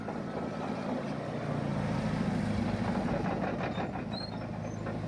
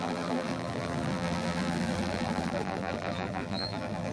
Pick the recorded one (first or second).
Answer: first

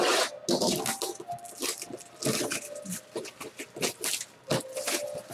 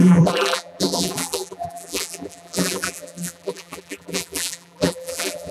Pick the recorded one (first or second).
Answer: first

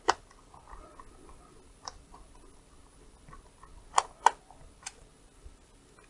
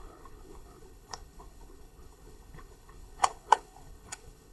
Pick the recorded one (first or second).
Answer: first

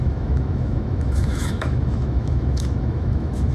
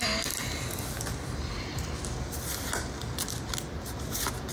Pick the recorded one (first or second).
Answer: second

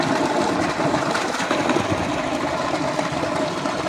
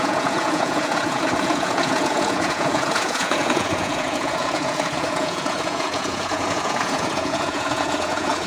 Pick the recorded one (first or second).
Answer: first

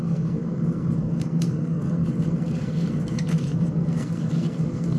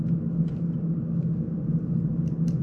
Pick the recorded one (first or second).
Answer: second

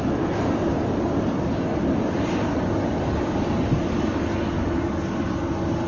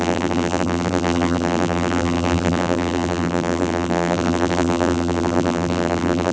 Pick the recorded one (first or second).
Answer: first